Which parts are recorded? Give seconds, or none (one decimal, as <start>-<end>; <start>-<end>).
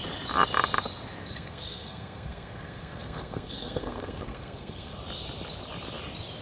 0.0-1.2; 5.0-6.4